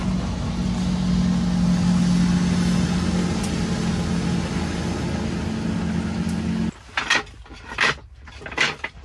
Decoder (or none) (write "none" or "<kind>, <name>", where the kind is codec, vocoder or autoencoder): none